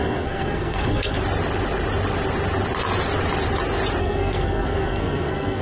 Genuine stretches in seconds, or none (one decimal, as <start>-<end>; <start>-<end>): 1.2-4.0